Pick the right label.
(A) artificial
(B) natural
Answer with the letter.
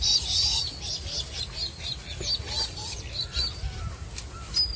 B